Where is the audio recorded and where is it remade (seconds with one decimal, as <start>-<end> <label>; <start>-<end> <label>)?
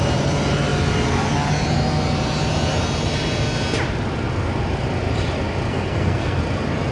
0.0-5.7 recorded; 5.7-6.4 remade; 6.4-6.9 recorded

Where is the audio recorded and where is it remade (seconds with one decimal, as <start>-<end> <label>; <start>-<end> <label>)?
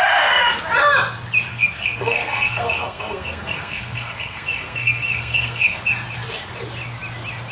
0.0-1.5 recorded; 1.5-5.8 remade; 5.8-7.5 recorded